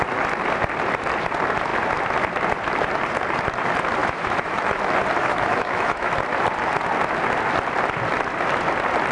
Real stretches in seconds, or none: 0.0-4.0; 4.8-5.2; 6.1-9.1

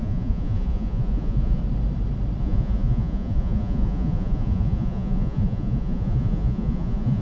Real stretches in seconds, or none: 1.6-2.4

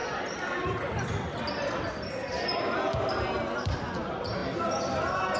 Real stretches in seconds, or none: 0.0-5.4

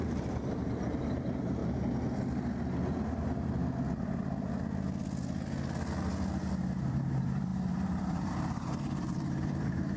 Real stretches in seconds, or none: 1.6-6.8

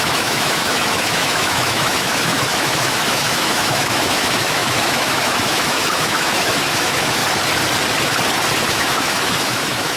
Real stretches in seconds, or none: 7.2-8.7